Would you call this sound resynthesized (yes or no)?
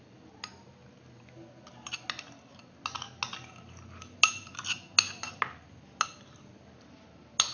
no